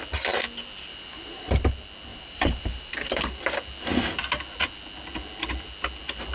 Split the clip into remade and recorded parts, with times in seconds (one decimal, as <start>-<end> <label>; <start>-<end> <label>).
0.0-0.9 recorded; 0.9-1.7 remade; 1.7-2.1 recorded; 2.1-3.4 remade; 3.4-6.3 recorded